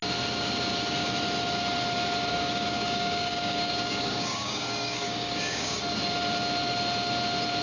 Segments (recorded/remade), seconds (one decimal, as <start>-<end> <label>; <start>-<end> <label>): 0.0-2.3 recorded; 2.3-5.8 remade; 5.8-7.6 recorded